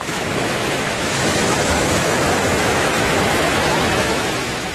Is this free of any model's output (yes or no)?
no